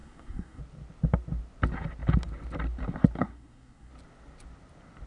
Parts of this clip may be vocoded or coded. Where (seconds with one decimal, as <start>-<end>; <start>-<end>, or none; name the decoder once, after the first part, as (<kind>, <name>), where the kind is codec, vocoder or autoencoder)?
0.0-0.6 (codec, SNAC); 3.2-3.9